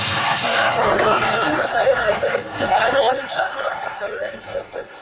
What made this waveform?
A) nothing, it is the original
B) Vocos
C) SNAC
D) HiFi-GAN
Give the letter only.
C